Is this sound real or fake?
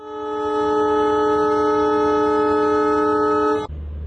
real